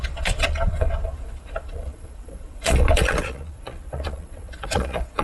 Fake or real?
fake